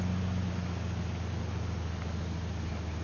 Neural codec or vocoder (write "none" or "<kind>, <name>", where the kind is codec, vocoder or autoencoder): none